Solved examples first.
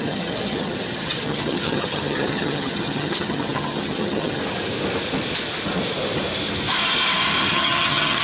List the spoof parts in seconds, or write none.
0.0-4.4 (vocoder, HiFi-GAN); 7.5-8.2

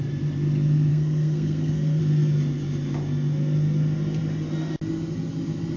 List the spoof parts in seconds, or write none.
0.9-2.0 (codec, SNAC)

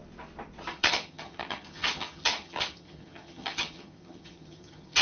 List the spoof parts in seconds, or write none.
0.7-5.0 (vocoder, HiFi-GAN)

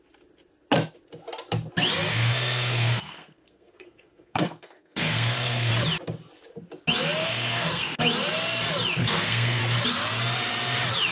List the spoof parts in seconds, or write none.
2.1-5.7 (codec, SNAC); 7.2-8.0; 9.0-9.6

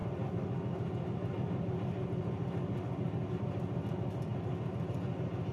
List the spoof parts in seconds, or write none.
none

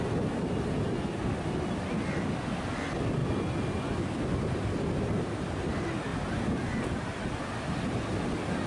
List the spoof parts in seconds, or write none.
none